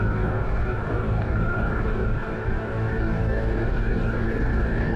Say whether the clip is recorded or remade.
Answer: remade